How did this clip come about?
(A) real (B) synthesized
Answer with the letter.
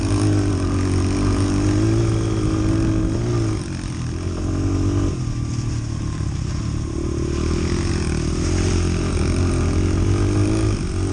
A